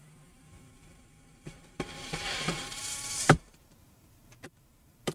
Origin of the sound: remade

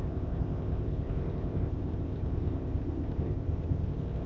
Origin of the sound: remade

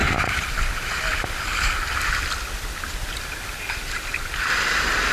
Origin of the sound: recorded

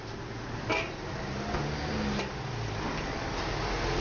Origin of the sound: recorded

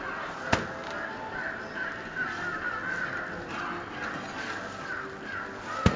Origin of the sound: recorded